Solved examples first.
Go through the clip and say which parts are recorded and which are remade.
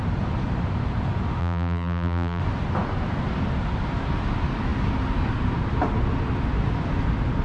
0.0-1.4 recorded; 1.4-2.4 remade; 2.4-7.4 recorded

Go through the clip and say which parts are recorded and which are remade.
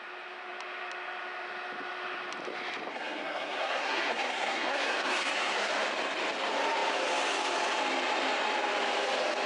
0.0-2.9 recorded; 2.9-5.7 remade; 5.7-9.5 recorded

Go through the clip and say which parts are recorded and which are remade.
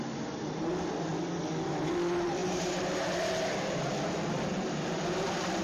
0.0-1.1 remade; 1.1-1.7 recorded; 1.7-5.6 remade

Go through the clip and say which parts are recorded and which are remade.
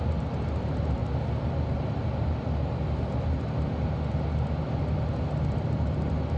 0.0-6.4 recorded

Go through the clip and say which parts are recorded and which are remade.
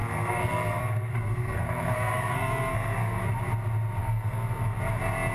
0.0-3.2 remade; 3.2-4.0 recorded; 4.0-4.8 remade; 4.8-5.3 recorded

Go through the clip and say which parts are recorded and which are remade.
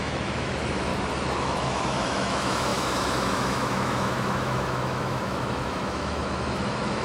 0.0-0.9 remade; 0.9-1.4 recorded; 1.4-7.0 remade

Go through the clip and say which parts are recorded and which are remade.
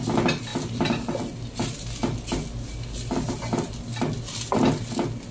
0.0-5.3 recorded